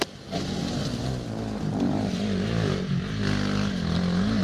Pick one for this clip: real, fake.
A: real